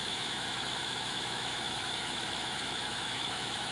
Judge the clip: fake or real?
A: fake